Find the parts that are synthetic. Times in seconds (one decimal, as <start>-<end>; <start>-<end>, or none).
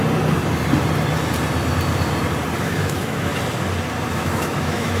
2.6-3.3; 4.1-5.0